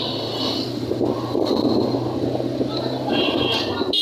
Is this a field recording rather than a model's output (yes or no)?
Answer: yes